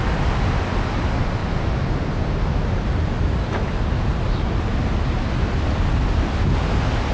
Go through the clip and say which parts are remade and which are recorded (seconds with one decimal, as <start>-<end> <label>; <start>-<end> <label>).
0.0-7.1 recorded